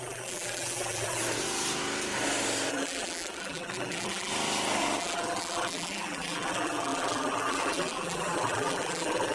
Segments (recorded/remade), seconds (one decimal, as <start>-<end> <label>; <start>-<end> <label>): 0.0-1.2 remade; 1.2-2.7 recorded; 2.7-4.3 remade; 4.3-5.0 recorded; 5.0-9.3 remade